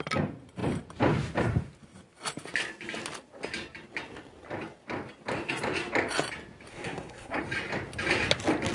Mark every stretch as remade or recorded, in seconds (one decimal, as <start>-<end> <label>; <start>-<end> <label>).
0.0-6.7 recorded; 6.7-7.4 remade; 7.4-8.7 recorded